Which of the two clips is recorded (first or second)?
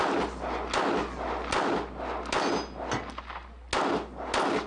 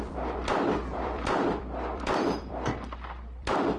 first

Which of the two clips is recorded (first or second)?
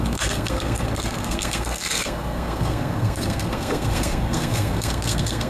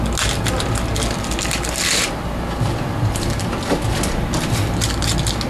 second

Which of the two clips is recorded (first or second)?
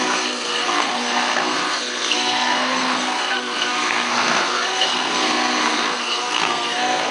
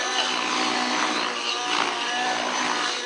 second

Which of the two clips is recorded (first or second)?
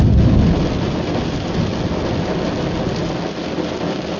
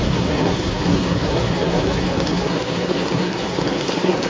first